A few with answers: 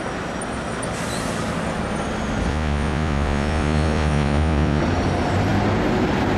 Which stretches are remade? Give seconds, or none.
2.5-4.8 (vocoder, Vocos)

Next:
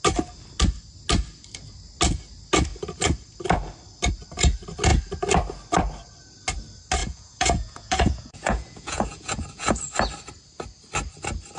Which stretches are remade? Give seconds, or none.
7.0-9.8 (vocoder, Vocos)

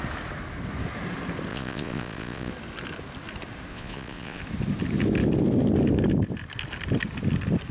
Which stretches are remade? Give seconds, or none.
1.5-2.5 (vocoder, Vocos); 3.7-4.4

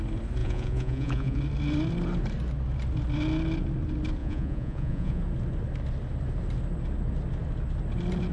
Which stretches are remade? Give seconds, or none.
0.4-1.4 (vocoder, Vocos); 4.2-5.2